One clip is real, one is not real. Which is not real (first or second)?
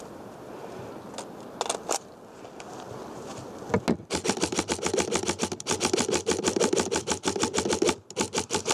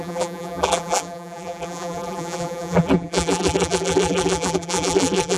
second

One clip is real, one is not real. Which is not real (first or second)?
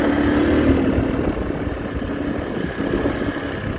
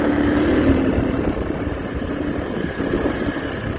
second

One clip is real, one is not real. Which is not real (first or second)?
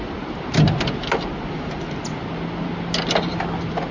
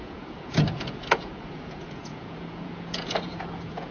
second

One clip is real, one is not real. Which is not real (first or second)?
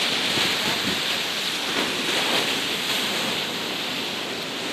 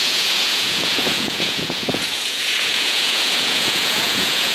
second